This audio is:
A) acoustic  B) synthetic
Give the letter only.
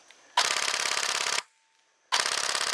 A